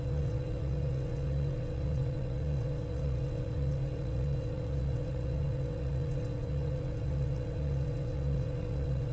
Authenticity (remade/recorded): remade